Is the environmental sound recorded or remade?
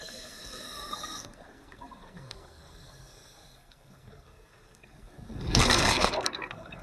remade